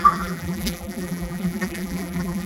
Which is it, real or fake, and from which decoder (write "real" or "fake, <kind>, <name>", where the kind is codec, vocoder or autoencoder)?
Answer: fake, vocoder, BigVGAN v2